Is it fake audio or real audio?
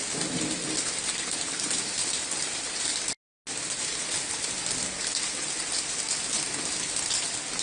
real